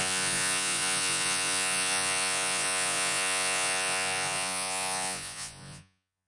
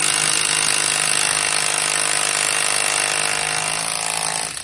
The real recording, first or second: second